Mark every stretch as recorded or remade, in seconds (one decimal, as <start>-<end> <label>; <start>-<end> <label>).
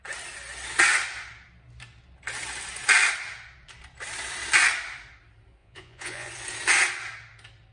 0.0-5.6 recorded; 5.6-6.3 remade; 6.3-7.7 recorded